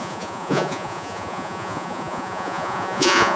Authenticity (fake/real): fake